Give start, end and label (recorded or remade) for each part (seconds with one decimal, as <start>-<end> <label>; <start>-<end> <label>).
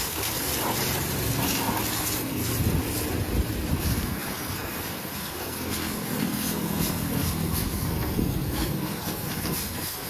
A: 0.0-0.5 remade; 0.5-1.9 recorded; 1.9-2.5 remade; 2.5-3.8 recorded; 3.8-10.1 remade